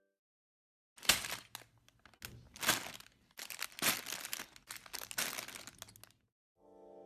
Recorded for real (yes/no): yes